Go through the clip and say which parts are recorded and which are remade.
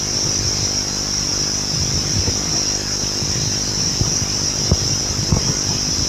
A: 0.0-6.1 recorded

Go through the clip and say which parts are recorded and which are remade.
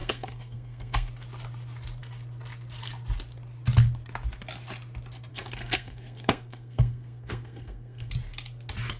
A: 0.0-1.1 remade; 1.1-5.3 recorded; 5.3-8.1 remade; 8.1-9.0 recorded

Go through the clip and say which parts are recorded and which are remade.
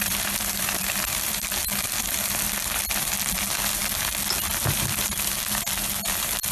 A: 0.0-0.8 remade; 0.8-2.0 recorded; 2.0-3.8 remade; 3.8-4.5 recorded; 4.5-6.5 remade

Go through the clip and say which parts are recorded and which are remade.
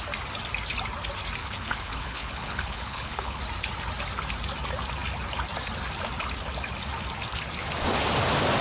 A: 0.0-1.4 recorded; 1.4-3.4 remade; 3.4-8.6 recorded